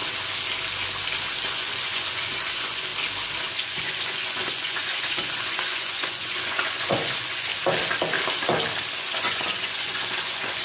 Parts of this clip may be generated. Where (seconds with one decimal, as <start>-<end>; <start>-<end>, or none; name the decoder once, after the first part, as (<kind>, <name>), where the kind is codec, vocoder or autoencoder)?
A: 1.5-2.9 (vocoder, Vocos); 3.5-7.5; 9.0-10.6